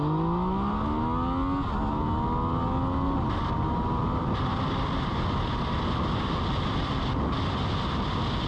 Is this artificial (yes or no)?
no